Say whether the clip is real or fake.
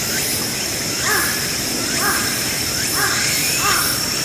real